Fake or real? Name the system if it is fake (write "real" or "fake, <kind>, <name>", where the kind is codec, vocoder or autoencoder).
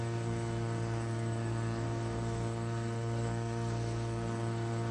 fake, codec, SNAC